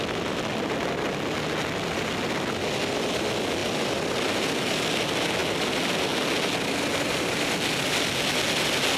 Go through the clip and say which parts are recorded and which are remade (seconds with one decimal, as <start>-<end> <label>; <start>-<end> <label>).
0.0-9.0 recorded